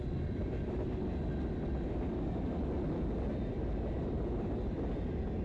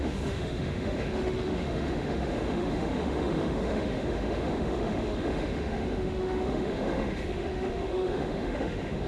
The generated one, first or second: second